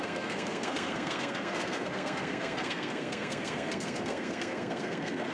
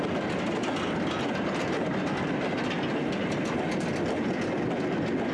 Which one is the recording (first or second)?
second